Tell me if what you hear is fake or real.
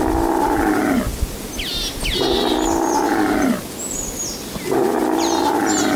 real